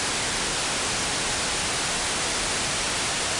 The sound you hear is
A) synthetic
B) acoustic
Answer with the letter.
B